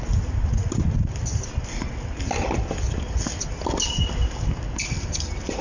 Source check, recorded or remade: recorded